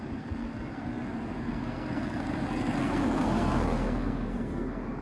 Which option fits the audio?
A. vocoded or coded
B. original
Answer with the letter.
A